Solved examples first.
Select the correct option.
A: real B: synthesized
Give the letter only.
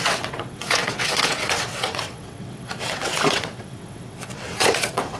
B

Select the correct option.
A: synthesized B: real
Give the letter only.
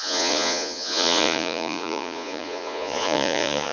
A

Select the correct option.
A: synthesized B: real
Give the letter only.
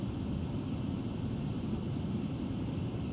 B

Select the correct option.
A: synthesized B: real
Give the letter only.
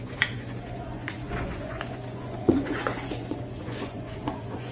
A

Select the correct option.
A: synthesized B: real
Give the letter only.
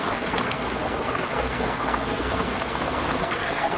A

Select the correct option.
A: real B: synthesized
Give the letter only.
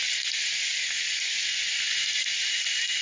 A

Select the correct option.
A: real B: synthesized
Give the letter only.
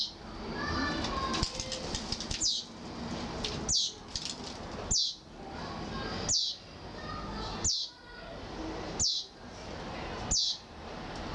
A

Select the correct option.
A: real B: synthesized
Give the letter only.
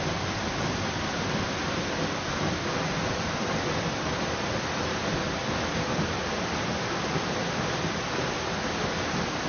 A